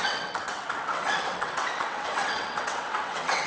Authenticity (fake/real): fake